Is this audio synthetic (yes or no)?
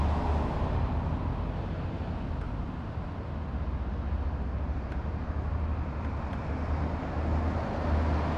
no